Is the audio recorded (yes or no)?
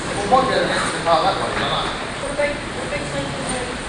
yes